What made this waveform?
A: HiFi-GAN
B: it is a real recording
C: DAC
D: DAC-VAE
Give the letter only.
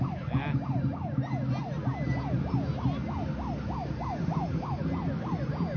B